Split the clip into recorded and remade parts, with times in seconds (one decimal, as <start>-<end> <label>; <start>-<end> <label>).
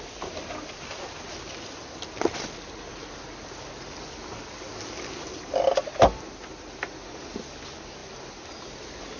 0.0-9.2 recorded